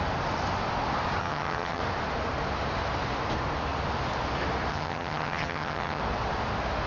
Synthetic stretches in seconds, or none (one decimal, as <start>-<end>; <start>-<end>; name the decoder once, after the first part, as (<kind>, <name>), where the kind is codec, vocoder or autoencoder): 1.2-1.8 (vocoder, HiFi-GAN); 4.7-6.0